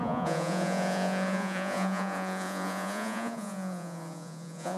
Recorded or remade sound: remade